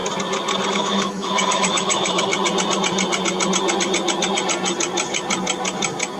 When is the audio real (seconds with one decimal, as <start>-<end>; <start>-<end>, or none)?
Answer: 0.0-0.7; 2.3-6.2

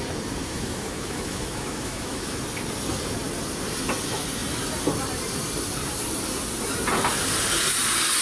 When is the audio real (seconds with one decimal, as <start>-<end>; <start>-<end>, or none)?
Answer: 0.0-0.4; 2.4-8.2

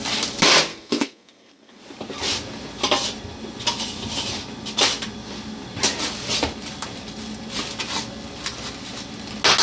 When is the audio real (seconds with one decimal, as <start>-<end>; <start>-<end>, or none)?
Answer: 0.0-0.7; 1.8-9.6

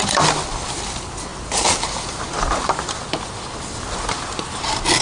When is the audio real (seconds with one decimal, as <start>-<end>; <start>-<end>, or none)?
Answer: 0.0-5.0